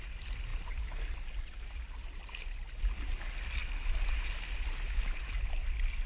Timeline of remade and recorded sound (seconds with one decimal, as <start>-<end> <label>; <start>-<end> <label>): 0.0-6.1 recorded